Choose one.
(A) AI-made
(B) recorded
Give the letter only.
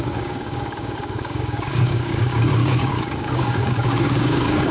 A